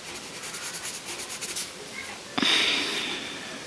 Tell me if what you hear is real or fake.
real